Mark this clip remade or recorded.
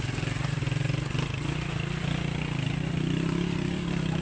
recorded